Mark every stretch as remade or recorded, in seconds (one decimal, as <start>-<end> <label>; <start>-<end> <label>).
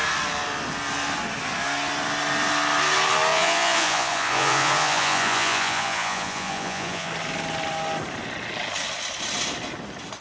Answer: 0.0-3.3 recorded; 3.3-7.1 remade; 7.1-10.2 recorded